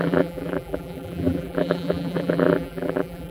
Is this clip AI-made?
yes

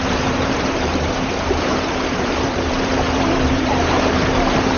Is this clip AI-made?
yes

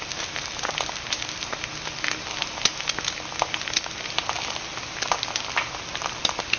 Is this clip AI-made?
no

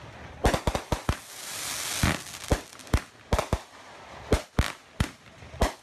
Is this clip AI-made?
no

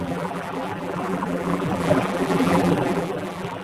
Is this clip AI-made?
yes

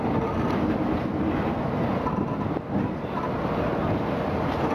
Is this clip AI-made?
no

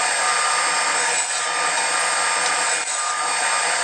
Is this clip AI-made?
no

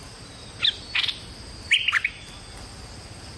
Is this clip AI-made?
no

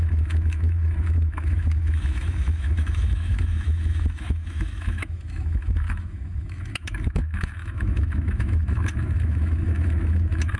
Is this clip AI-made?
yes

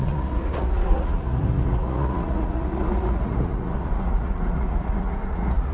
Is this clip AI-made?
yes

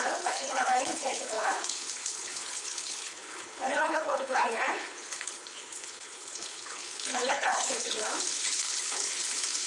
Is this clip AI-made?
yes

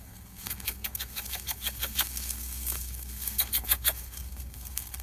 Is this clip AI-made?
yes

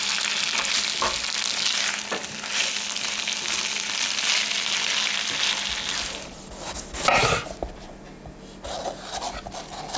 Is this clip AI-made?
no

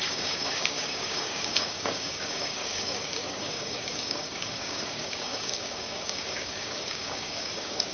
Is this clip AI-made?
yes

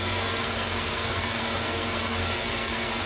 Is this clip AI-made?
yes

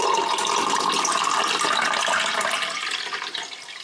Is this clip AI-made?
yes